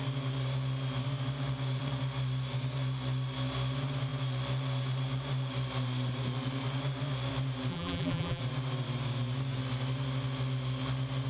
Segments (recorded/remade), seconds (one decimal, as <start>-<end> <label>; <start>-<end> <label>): 0.0-7.7 recorded; 7.7-8.4 remade; 8.4-11.3 recorded